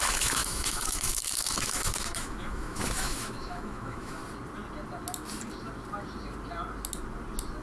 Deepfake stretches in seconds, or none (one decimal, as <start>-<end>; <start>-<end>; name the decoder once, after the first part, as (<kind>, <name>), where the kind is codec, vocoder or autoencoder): 0.0-4.2 (autoencoder, DAC-VAE)